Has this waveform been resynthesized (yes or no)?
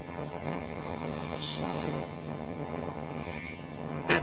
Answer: yes